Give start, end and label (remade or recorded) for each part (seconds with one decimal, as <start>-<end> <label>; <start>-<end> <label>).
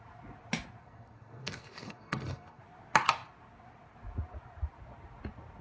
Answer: 0.0-0.8 recorded; 0.8-2.6 remade; 2.6-5.6 recorded